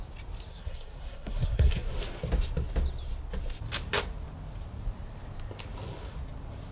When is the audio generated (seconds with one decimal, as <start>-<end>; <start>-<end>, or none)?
0.5-1.9